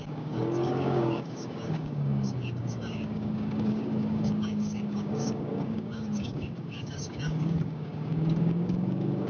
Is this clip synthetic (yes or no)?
yes